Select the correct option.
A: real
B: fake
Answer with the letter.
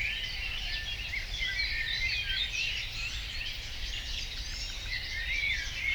A